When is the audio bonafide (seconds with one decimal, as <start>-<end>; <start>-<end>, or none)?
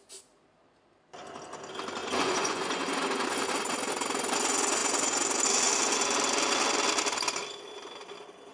0.0-2.0; 2.8-8.5